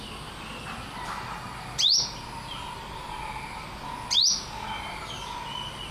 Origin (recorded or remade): recorded